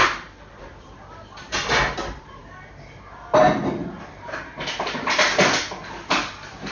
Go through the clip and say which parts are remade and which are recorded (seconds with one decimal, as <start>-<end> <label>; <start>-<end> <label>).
0.0-6.7 recorded